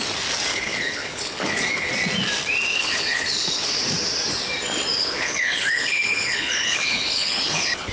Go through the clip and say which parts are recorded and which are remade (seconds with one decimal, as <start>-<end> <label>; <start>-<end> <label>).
0.0-0.5 recorded; 0.5-1.9 remade; 1.9-2.7 recorded; 2.7-3.7 remade; 3.7-5.0 recorded; 5.0-7.9 remade